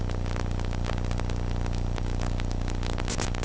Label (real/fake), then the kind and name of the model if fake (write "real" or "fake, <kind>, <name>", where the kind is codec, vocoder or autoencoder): real